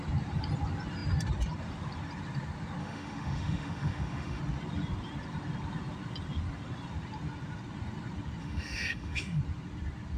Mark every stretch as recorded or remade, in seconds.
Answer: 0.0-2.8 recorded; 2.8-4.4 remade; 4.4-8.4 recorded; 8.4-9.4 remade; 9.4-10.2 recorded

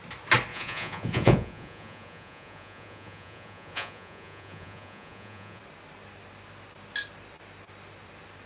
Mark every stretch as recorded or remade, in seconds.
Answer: 0.0-0.5 recorded; 0.5-5.6 remade; 5.6-8.5 recorded